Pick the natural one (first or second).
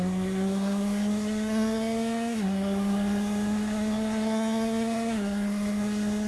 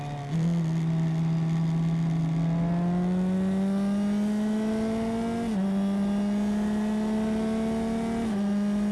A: second